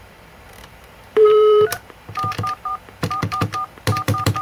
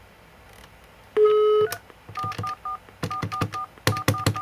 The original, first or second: second